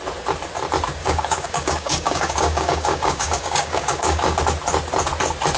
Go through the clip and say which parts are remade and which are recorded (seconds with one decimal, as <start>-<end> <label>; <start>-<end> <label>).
0.0-1.0 recorded; 1.0-4.4 remade; 4.4-5.6 recorded